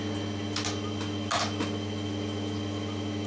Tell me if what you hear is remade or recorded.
recorded